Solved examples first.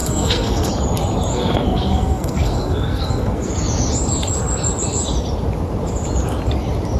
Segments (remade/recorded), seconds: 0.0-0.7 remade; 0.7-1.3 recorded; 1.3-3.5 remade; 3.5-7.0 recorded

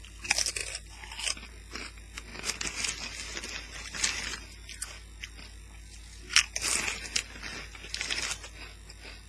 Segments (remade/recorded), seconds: 0.0-9.3 recorded

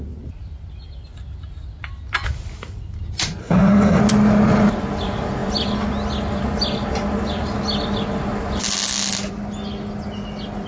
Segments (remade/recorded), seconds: 0.0-3.4 recorded; 3.4-4.0 remade; 4.0-10.7 recorded